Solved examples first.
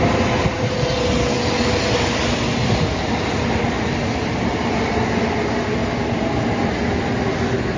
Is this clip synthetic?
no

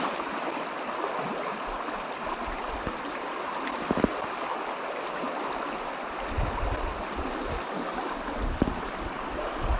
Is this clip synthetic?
no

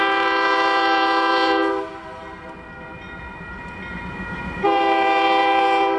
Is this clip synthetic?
yes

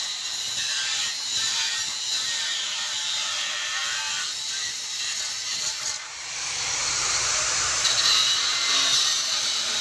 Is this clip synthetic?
yes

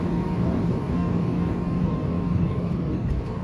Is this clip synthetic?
yes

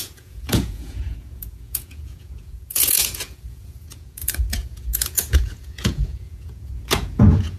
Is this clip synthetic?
yes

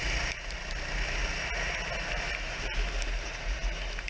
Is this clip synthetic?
no